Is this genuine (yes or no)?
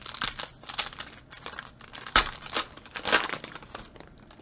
yes